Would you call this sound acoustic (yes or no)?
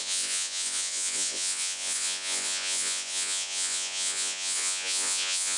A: no